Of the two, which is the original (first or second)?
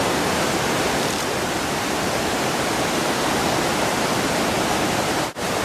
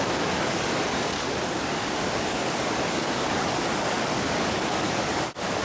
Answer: first